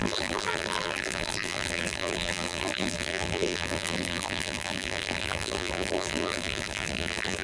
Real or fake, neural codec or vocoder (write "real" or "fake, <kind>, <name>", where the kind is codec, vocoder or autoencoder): fake, vocoder, BigVGAN v2